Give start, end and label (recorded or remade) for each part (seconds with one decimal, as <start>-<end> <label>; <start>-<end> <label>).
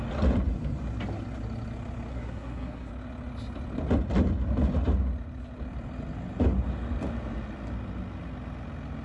0.0-2.1 recorded; 2.1-2.9 remade; 2.9-9.0 recorded